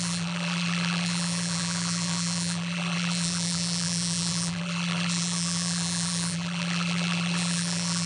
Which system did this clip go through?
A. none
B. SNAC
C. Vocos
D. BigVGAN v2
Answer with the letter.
D